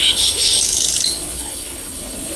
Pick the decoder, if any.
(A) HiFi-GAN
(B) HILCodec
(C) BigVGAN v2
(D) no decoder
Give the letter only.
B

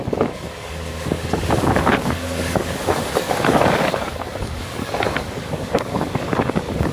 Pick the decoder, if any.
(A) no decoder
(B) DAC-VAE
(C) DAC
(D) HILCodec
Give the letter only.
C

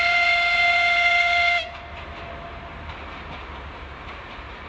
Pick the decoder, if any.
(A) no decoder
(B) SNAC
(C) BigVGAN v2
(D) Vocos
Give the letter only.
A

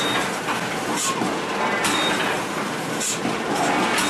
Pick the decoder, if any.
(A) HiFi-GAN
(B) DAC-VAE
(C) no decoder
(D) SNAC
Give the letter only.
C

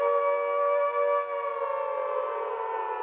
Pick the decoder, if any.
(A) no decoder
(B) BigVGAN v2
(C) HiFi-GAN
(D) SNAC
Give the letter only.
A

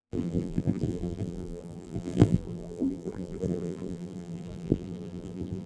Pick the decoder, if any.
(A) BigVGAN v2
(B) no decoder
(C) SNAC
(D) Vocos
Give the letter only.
A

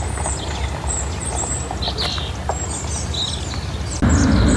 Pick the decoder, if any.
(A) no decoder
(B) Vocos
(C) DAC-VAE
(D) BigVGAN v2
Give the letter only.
A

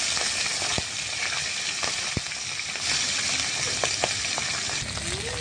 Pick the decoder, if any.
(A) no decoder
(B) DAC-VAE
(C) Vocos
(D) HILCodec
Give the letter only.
A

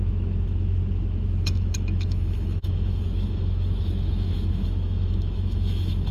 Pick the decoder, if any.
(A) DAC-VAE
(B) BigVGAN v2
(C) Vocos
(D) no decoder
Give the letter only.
A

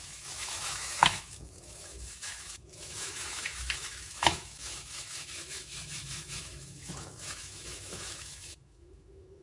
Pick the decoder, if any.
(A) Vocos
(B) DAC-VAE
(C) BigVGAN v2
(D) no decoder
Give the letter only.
B